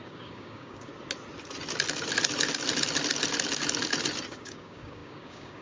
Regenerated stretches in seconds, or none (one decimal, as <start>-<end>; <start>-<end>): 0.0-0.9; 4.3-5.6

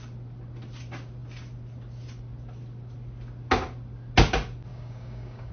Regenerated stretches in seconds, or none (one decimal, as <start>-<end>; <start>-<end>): 4.7-5.5

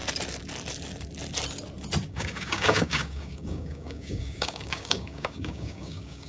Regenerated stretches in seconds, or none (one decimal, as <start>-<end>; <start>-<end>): 2.1-6.3